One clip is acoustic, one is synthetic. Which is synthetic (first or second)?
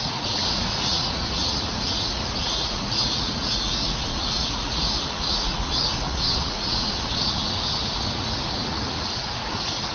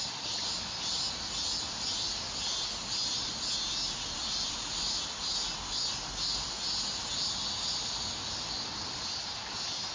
first